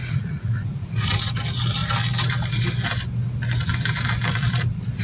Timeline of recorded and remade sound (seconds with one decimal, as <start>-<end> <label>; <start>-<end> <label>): 0.0-1.3 remade; 1.3-5.0 recorded